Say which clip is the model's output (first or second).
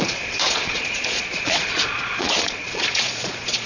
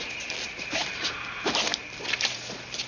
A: first